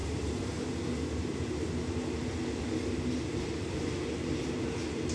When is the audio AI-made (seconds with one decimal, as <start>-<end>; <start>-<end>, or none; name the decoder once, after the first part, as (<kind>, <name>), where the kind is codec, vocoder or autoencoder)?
none

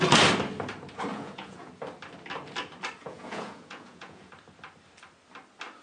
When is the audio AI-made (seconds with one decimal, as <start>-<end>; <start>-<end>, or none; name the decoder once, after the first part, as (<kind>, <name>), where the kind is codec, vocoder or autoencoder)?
1.1-1.7 (vocoder, Vocos); 3.0-4.3

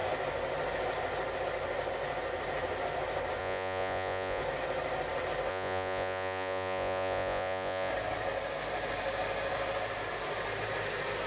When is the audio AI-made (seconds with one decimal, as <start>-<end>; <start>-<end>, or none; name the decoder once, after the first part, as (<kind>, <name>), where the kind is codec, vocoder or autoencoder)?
3.4-4.4 (vocoder, Vocos); 5.5-7.9

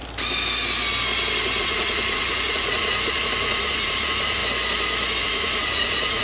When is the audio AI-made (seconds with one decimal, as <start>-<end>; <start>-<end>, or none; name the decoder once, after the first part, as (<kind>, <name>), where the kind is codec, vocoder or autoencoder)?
1.6-4.4 (vocoder, Vocos); 5.2-6.2